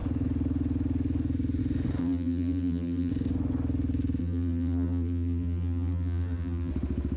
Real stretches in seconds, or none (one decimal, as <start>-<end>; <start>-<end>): 0.0-2.0; 3.1-4.2; 6.7-7.2